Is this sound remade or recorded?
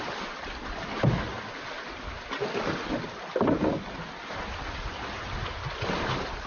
recorded